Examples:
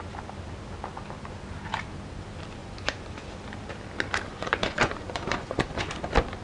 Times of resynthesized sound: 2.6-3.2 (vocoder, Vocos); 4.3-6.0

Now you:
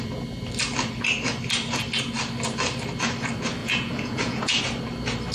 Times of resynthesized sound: 3.6-4.6 (vocoder, Vocos)

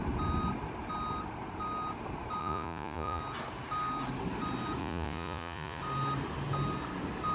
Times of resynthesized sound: 2.4-3.2 (vocoder, Vocos); 4.8-5.8

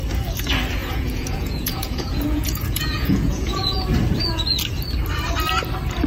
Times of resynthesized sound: 0.8-3.8 (vocoder, Vocos)